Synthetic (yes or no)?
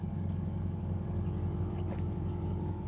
yes